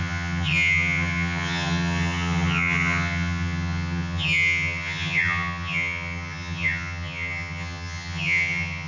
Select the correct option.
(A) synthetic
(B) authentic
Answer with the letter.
A